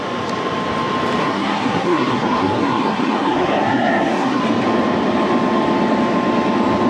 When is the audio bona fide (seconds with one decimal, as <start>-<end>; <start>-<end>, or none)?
0.0-1.2; 4.4-6.9